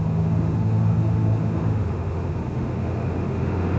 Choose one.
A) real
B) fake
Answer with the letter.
B